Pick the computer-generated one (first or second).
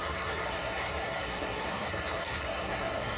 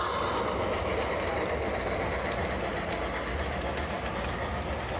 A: first